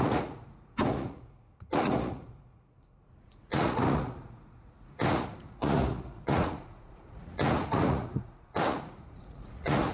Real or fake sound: fake